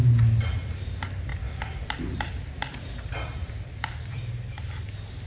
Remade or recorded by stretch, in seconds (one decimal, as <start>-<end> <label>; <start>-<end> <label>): 0.0-1.3 recorded; 1.3-3.5 remade; 3.5-5.3 recorded